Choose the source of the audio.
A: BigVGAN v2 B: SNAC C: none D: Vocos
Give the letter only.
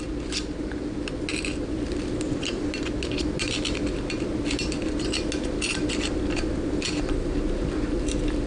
C